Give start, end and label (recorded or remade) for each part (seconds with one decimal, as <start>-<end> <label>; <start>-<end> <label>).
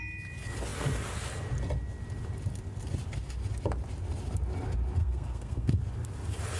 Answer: 0.0-5.0 recorded; 5.0-5.8 remade; 5.8-6.6 recorded